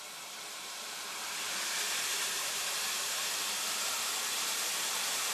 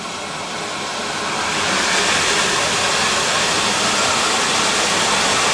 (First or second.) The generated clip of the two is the first